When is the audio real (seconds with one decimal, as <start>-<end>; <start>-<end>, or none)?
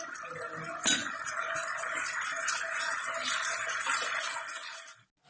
0.0-1.0; 4.2-5.3